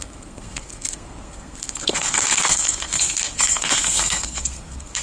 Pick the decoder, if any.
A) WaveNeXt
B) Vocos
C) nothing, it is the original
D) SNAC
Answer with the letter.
D